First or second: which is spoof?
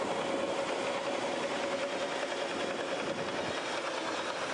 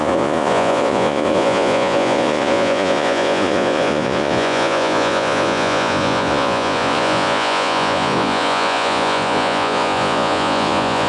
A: second